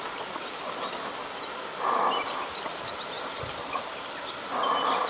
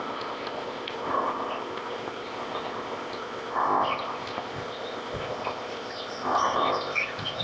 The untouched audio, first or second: first